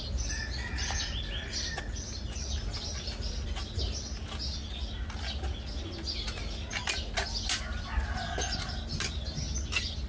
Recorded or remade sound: recorded